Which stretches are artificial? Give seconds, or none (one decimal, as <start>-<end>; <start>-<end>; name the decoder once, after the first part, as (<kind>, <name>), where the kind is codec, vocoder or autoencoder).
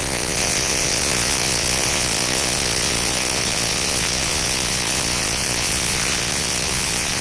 0.0-7.2 (vocoder, Vocos)